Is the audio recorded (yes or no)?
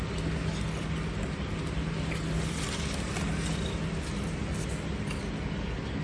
yes